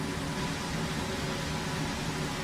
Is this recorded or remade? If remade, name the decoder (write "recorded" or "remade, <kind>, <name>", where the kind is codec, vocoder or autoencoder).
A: recorded